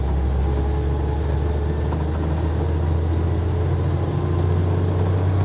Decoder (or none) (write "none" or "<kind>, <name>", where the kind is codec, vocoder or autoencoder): none